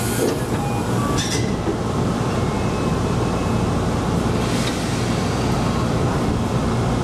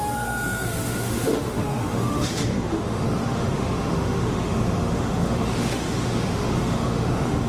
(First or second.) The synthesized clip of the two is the second